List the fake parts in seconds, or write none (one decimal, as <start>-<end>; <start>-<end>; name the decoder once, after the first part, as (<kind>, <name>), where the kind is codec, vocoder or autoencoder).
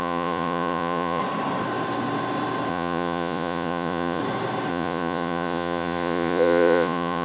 0.0-1.2 (vocoder, Vocos); 2.7-4.2; 4.7-7.2